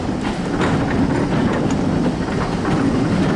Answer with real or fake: real